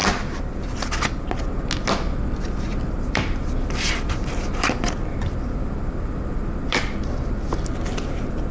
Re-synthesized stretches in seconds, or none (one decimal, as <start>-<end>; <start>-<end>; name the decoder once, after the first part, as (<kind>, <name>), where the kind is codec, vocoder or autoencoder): 2.7-7.0 (vocoder, BigVGAN v2)